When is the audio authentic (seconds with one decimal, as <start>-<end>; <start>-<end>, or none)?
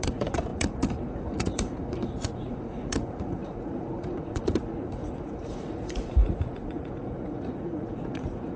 none